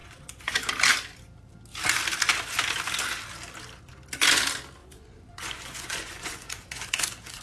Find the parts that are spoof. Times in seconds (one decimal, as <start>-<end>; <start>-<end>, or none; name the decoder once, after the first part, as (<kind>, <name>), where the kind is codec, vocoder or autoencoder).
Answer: 0.0-0.7 (vocoder, Vocos); 4.8-7.4